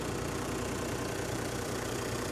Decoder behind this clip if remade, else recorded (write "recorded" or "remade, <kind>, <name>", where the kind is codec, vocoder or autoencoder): remade, vocoder, BigVGAN v2